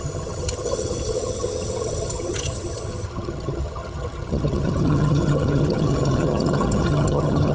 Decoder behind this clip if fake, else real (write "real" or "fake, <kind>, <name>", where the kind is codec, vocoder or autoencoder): fake, vocoder, HiFi-GAN